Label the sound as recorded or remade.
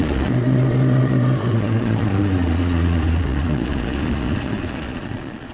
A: remade